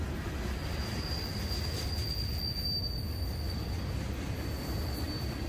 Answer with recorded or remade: recorded